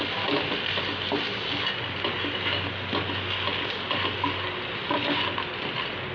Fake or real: real